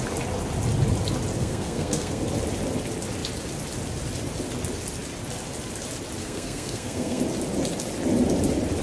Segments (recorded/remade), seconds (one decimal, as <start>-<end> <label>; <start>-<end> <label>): 0.0-1.4 recorded; 1.4-2.2 remade; 2.2-6.2 recorded; 6.2-7.2 remade; 7.2-8.8 recorded